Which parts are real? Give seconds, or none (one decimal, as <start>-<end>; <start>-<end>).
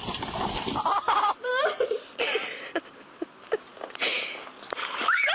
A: 1.5-2.1; 3.7-4.5